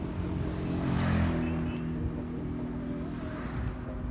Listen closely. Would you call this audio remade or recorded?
recorded